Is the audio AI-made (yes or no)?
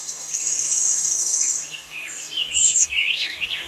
yes